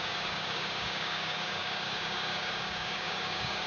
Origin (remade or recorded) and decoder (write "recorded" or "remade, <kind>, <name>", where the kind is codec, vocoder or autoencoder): remade, codec, DAC